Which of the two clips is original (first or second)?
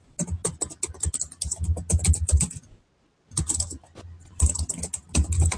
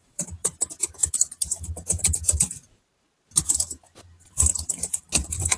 first